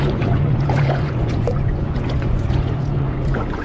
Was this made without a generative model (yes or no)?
no